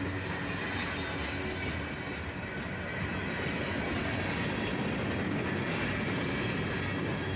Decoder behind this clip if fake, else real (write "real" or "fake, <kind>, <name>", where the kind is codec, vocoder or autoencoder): real